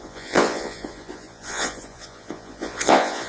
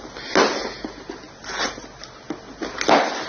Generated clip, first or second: first